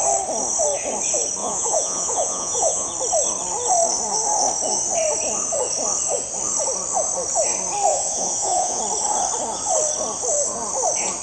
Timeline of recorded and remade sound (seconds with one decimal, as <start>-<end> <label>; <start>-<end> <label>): 0.0-1.4 recorded; 1.4-2.9 remade; 2.9-7.9 recorded; 7.9-8.8 remade; 8.8-11.2 recorded